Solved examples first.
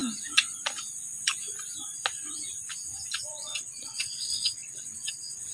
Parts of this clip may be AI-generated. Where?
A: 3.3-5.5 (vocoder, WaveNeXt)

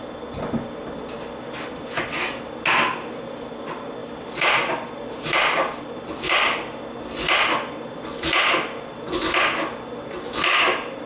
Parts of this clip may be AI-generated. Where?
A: 4.0-6.8 (vocoder, BigVGAN v2)

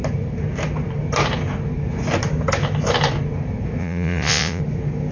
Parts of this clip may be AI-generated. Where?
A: 3.8-4.6 (vocoder, Vocos)

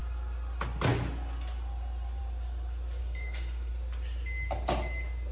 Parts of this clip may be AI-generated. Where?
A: 3.0-3.7 (codec, DAC)

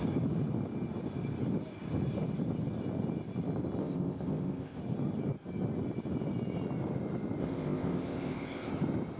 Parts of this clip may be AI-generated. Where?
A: 3.8-4.8 (codec, ZipCodec); 7.4-8.7

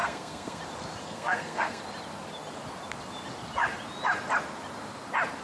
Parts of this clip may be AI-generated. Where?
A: 0.0-0.6 (codec, SNAC); 1.0-1.8

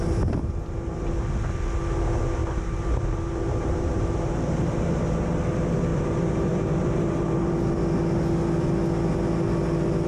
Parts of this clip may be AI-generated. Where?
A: 2.4-4.0 (vocoder, BigVGAN v2); 5.9-7.5